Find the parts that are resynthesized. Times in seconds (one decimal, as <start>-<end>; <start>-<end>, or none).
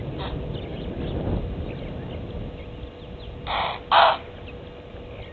none